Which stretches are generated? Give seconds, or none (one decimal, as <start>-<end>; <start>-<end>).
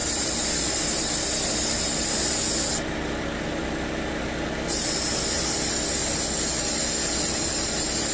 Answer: none